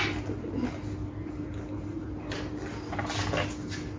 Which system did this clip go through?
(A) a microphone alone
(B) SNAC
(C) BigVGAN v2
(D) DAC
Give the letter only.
A